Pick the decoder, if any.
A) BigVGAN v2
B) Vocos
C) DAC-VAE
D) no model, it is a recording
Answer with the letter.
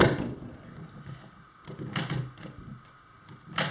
D